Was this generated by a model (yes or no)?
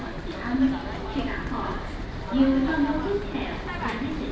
no